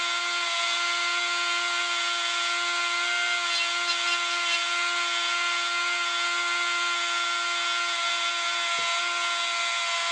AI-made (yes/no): no